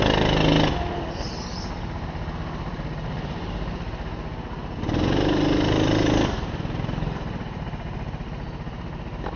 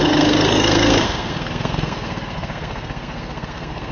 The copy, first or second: second